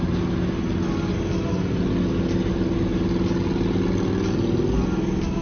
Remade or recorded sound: recorded